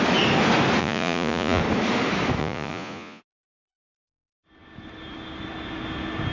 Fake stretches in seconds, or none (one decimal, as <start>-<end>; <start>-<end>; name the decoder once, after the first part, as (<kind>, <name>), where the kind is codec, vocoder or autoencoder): 0.8-1.6 (vocoder, Vocos); 2.4-3.2